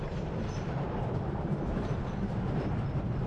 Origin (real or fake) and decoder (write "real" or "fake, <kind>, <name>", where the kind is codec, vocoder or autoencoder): fake, vocoder, BigVGAN v2